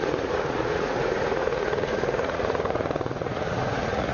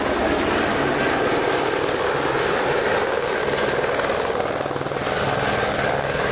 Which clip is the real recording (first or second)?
second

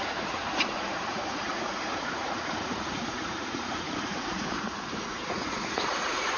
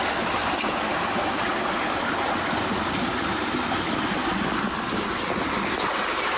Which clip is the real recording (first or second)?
second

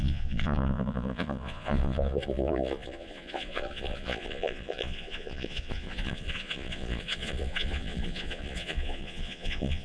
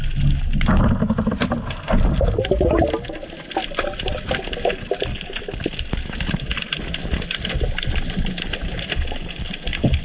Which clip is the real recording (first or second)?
second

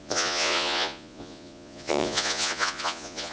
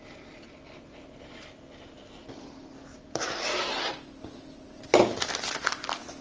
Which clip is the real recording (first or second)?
second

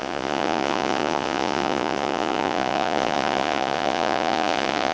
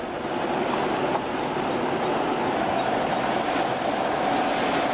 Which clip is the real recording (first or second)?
second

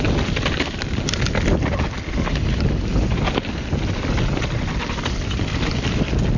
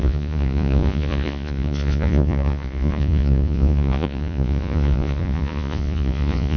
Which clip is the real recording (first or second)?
first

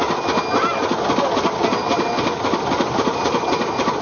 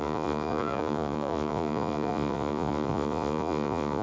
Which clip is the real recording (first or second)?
first